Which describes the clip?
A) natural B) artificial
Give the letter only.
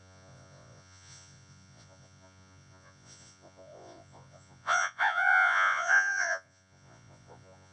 B